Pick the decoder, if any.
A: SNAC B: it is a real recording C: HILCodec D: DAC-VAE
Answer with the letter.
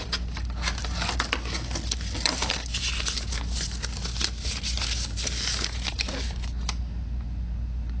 B